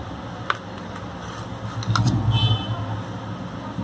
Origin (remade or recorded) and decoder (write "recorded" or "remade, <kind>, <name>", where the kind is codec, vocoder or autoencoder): recorded